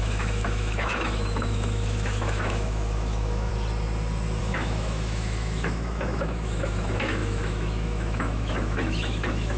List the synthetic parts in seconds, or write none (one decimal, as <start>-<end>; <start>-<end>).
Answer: 0.0-3.5; 4.4-9.6